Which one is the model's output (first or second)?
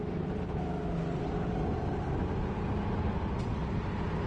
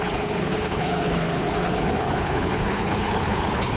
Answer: second